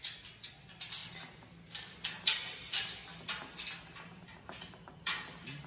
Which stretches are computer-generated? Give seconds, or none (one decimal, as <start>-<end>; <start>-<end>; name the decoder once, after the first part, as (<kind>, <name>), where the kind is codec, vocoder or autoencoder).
none